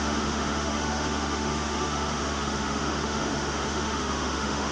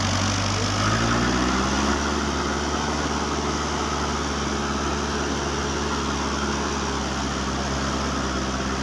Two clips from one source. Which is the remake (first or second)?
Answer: first